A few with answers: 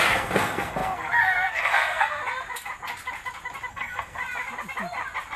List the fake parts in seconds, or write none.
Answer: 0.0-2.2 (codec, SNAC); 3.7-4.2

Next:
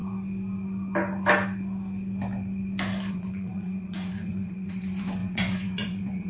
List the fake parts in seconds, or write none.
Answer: 3.1-6.3 (vocoder, Vocos)

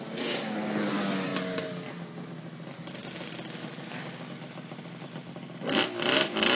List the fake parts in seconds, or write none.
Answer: none